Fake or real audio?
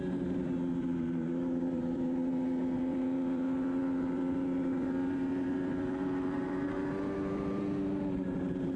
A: fake